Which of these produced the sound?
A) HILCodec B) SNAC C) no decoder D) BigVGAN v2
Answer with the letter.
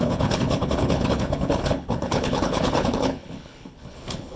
A